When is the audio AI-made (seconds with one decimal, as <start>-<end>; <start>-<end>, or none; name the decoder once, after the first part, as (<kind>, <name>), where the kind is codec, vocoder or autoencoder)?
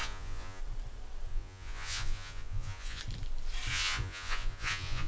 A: 0.0-0.6 (vocoder, Vocos); 1.3-3.0; 3.7-5.1